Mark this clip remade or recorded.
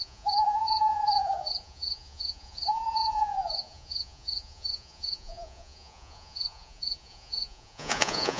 remade